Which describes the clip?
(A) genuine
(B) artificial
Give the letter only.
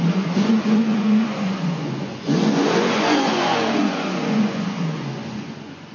B